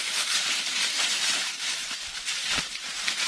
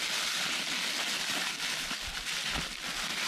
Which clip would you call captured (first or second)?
second